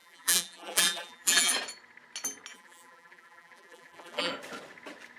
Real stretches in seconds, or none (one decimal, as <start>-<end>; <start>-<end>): 1.5-2.5; 4.3-5.2